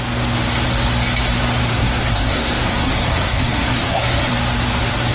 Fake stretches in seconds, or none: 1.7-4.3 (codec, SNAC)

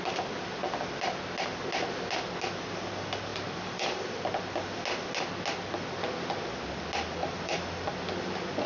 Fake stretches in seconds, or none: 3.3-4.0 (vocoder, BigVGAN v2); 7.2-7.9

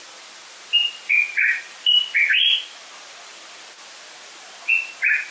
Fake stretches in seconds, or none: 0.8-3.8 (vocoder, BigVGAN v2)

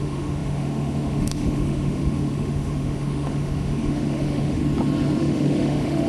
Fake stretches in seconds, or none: 0.0-4.6 (autoencoder, DAC-VAE); 5.2-6.1